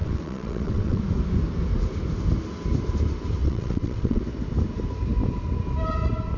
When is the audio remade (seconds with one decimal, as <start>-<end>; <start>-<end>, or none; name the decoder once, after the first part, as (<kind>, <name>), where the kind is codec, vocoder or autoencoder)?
0.0-1.0 (vocoder, WaveNeXt); 3.4-4.2

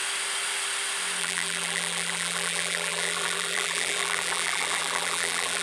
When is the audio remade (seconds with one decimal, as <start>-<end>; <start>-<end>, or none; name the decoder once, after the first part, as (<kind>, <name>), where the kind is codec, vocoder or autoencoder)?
1.2-5.6 (vocoder, BigVGAN v2)

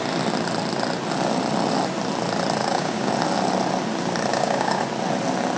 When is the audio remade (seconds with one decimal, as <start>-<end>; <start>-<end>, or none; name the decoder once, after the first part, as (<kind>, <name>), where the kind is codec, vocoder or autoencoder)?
2.6-3.1 (codec, DAC); 4.3-4.8

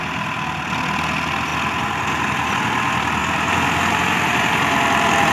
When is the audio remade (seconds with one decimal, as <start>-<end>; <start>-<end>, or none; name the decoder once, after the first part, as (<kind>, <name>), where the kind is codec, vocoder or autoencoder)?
3.2-5.3 (vocoder, BigVGAN v2)

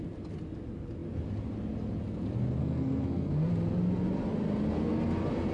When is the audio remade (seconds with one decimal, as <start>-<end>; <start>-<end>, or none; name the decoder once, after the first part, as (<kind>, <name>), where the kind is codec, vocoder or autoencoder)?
2.6-3.5 (codec, SNAC)